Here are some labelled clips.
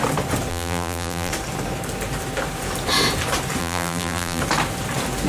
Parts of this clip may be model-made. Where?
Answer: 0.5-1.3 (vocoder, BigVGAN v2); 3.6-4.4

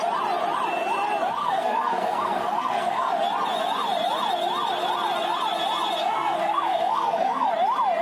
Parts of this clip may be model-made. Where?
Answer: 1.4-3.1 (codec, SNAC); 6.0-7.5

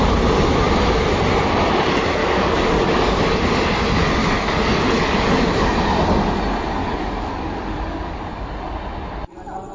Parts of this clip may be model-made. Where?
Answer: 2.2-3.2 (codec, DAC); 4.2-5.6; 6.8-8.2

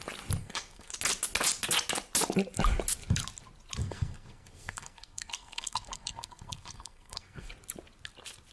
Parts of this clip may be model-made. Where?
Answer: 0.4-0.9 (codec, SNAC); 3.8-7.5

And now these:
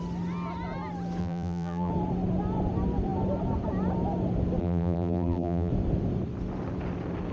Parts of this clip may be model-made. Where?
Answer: 1.2-1.9 (vocoder, BigVGAN v2); 4.6-5.7

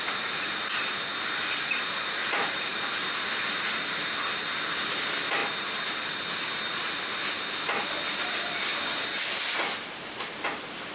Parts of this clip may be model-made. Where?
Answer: 2.7-3.5 (vocoder, BigVGAN v2); 5.4-6.2; 8.7-9.4

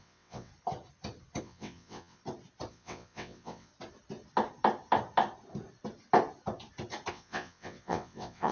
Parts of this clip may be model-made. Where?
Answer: 0.0-0.5 (vocoder, WaveNeXt); 1.4-2.2; 2.7-3.7; 7.1-8.5